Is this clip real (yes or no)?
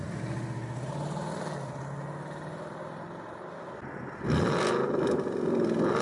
yes